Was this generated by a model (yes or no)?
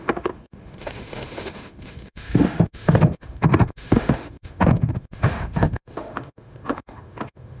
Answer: yes